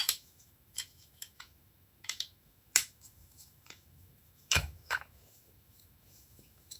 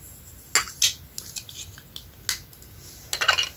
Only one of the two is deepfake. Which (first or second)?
first